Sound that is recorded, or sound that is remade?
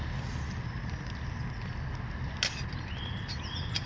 recorded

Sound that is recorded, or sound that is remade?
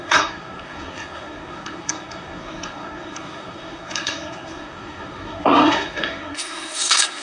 remade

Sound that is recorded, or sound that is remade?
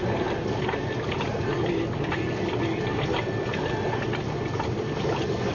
recorded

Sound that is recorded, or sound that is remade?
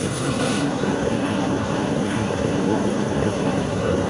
remade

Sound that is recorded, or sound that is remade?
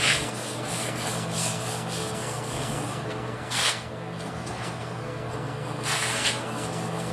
remade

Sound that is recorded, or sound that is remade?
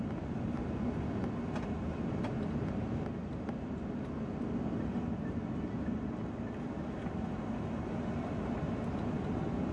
recorded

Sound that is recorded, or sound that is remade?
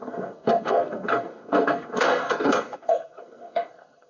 remade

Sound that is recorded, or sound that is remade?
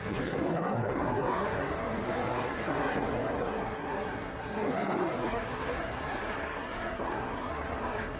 remade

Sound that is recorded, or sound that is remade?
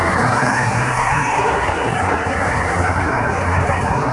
remade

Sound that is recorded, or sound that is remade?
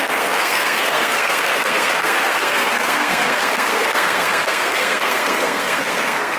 remade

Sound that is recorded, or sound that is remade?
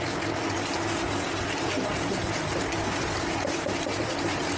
recorded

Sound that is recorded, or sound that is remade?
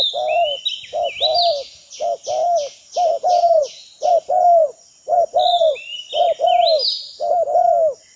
recorded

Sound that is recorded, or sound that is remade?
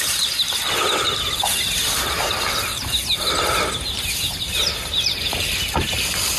recorded